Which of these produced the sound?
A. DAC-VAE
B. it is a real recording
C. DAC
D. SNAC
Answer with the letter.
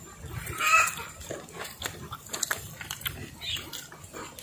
B